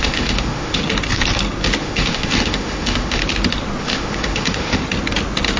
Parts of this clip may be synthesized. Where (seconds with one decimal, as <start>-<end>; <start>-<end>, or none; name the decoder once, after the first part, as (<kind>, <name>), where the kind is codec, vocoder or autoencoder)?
0.0-0.8 (autoencoder, DAC-VAE); 1.8-3.2; 3.8-4.8